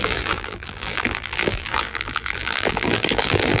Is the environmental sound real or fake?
fake